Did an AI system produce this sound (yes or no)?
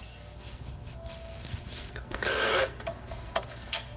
yes